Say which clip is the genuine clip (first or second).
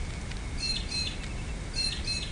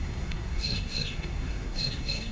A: first